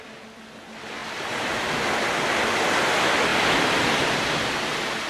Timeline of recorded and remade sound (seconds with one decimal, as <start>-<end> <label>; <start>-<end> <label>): 0.0-5.1 recorded